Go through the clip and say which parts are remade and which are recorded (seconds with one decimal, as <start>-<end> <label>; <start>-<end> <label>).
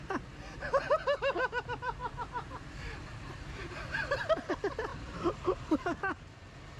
0.0-2.0 recorded; 2.0-4.2 remade; 4.2-4.9 recorded; 4.9-6.2 remade; 6.2-6.8 recorded